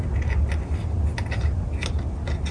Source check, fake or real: real